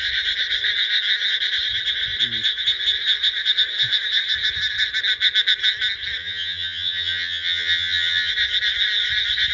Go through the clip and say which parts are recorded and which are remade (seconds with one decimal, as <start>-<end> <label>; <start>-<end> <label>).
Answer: 0.0-6.2 recorded; 6.2-8.3 remade; 8.3-9.5 recorded